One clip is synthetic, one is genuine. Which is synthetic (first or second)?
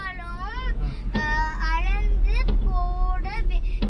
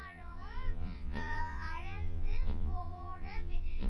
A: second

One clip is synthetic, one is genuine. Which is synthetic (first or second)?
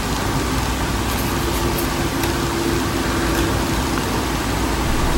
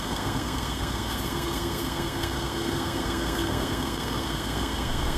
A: second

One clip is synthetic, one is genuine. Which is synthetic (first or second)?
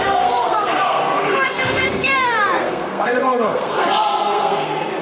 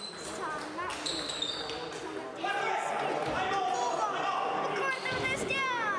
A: first